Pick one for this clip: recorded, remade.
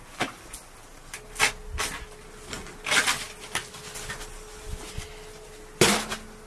recorded